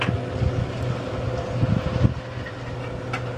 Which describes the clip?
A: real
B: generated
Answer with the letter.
A